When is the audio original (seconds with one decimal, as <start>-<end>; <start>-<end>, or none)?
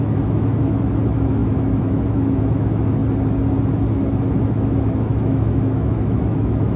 3.0-3.9